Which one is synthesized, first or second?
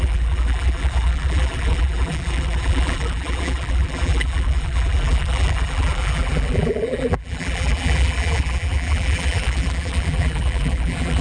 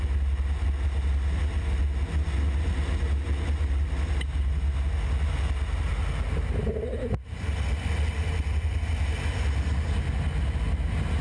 first